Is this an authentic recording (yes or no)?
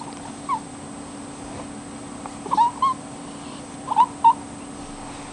yes